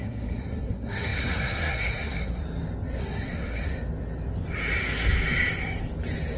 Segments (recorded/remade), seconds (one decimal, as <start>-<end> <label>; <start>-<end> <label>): 0.0-2.4 remade; 2.4-3.0 recorded; 3.0-3.7 remade; 3.7-6.4 recorded